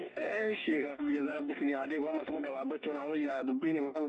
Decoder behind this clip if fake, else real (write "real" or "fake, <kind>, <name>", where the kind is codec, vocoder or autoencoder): fake, codec, DAC